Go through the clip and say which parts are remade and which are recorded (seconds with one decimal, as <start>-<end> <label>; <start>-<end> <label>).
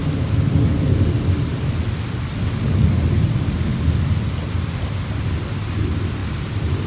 0.0-6.9 recorded